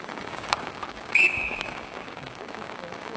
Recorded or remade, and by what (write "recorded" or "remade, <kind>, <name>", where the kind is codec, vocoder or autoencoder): remade, codec, DAC